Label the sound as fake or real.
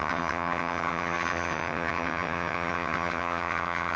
fake